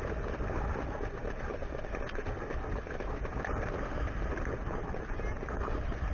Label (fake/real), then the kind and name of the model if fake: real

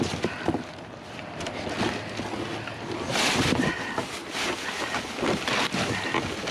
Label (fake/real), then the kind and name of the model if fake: real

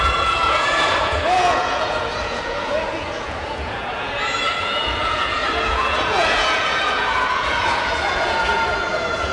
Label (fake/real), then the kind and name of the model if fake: fake, vocoder, Vocos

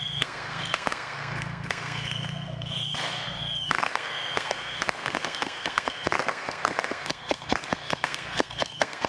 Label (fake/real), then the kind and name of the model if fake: fake, codec, SNAC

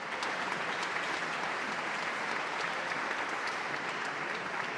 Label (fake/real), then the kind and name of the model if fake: real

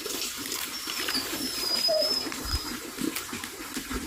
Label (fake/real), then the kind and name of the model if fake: fake, vocoder, BigVGAN v2